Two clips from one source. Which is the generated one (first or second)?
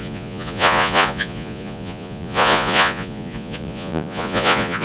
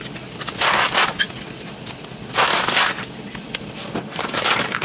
first